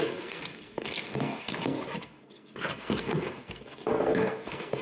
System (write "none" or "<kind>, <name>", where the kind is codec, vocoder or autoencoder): codec, SNAC